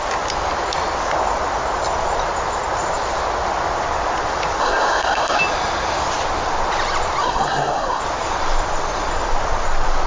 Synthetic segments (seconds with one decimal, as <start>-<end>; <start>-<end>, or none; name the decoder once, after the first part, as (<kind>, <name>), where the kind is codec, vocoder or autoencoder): 4.6-5.4 (codec, SNAC); 7.2-8.0